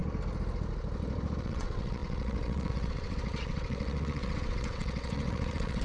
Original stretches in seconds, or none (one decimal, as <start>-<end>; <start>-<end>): 0.0-1.4